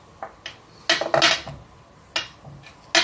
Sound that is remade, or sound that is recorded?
recorded